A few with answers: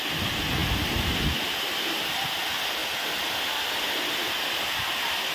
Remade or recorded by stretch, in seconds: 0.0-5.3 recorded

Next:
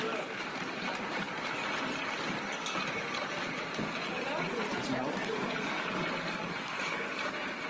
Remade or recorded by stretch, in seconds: 0.0-5.2 recorded; 5.2-6.0 remade; 6.0-6.4 recorded; 6.4-7.2 remade; 7.2-7.7 recorded

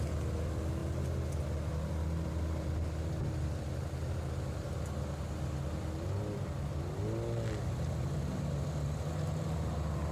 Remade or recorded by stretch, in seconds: 0.0-10.1 recorded

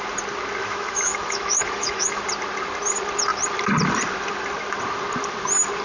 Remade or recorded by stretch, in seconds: 0.0-0.6 recorded; 0.6-2.2 remade; 2.2-5.8 recorded

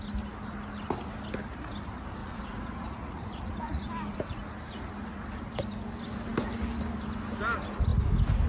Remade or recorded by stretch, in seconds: 0.0-2.2 recorded; 2.2-3.9 remade; 3.9-8.5 recorded

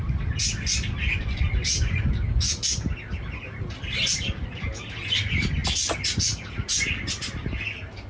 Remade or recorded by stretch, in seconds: 0.0-8.1 recorded

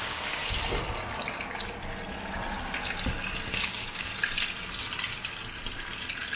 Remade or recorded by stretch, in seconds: 0.0-0.4 remade; 0.4-3.5 recorded; 3.5-4.1 remade; 4.1-6.4 recorded

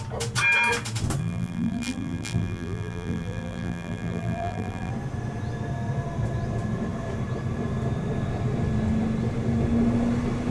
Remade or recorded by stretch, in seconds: 0.0-1.2 recorded; 1.2-4.9 remade; 4.9-10.5 recorded